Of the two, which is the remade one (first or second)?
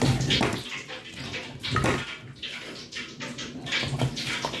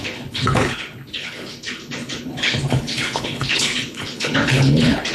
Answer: second